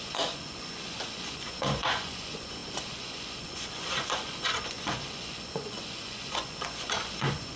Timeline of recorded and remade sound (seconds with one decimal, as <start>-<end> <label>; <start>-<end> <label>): 0.0-7.6 remade